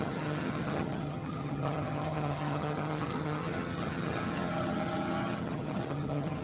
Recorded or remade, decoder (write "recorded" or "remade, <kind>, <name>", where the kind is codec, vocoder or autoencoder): remade, vocoder, HiFi-GAN